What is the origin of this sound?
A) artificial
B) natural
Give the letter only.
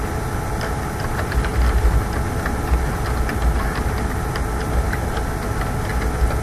B